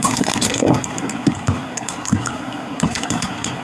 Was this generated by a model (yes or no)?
yes